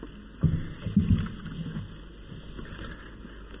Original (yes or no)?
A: yes